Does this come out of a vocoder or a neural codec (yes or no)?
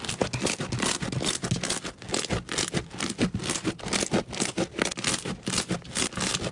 no